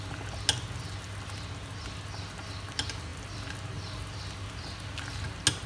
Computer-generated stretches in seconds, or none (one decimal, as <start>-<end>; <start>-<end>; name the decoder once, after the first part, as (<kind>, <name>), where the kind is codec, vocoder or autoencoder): none